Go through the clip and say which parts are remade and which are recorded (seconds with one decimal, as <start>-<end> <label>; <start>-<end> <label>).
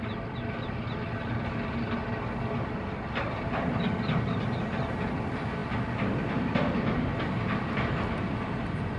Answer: 0.0-9.0 recorded